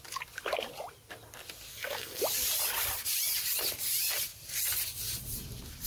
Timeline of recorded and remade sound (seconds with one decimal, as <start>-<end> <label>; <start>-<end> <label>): 0.0-1.7 recorded; 1.7-2.2 remade; 2.2-5.9 recorded